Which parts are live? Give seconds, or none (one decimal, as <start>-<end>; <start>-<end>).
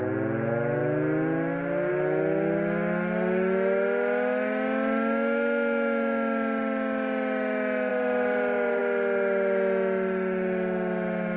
0.0-7.9; 8.8-11.4